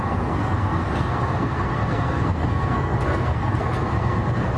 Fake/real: fake